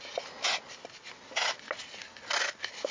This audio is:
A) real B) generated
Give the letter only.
A